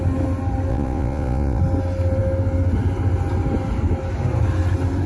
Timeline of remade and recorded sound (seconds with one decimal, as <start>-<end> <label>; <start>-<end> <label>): 0.0-0.7 recorded; 0.7-1.6 remade; 1.6-5.1 recorded